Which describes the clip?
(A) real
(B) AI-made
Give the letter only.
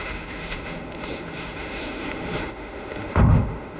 B